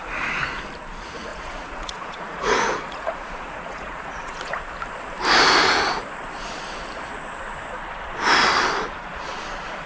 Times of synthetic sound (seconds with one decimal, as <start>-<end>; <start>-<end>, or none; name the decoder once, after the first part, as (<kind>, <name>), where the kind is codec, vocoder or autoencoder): 1.3-4.5 (vocoder, Vocos)